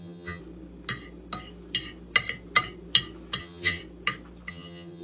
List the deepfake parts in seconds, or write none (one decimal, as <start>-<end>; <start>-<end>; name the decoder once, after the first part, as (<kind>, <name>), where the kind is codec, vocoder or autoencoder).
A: 0.0-0.4 (vocoder, HiFi-GAN); 3.4-3.8; 4.5-5.0

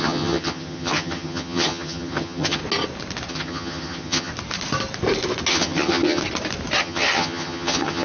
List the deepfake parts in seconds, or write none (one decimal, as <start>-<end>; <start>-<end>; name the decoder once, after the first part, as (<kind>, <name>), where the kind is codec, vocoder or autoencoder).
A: 0.0-2.6 (vocoder, HiFi-GAN); 3.3-4.3; 5.5-6.2; 6.8-8.0

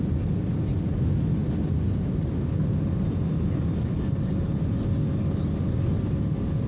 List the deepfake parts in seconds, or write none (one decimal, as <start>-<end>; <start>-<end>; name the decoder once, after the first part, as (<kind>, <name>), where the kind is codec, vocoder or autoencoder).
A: none

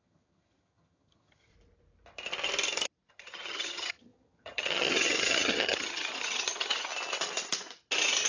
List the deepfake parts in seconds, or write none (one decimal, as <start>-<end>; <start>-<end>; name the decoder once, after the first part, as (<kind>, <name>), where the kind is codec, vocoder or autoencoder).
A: 0.0-1.5 (vocoder, HiFi-GAN); 3.1-6.9